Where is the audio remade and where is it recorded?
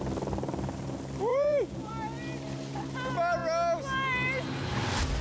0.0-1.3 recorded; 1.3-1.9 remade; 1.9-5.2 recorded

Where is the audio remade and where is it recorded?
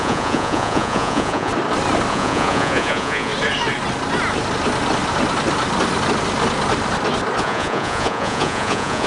0.0-1.5 remade; 1.5-2.1 recorded; 2.1-3.3 remade; 3.3-7.4 recorded; 7.4-9.1 remade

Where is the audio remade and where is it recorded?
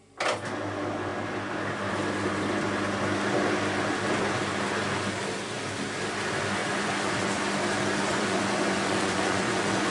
0.0-6.6 recorded; 6.6-7.4 remade; 7.4-8.1 recorded; 8.1-9.9 remade